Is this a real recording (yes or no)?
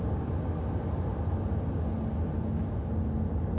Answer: yes